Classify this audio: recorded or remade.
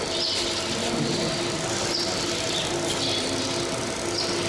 recorded